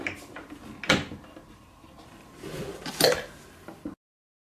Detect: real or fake real